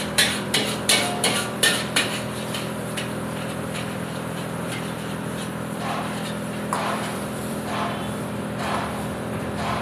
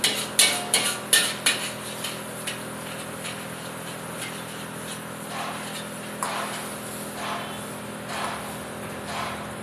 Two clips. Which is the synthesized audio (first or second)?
first